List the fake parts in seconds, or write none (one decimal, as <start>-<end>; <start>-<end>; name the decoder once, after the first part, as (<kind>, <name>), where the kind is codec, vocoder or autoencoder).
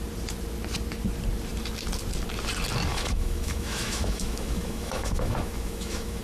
2.9-6.2 (autoencoder, DAC-VAE)